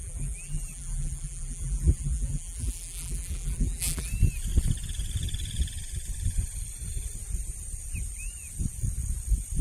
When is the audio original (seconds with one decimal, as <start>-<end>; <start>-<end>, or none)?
4.1-9.6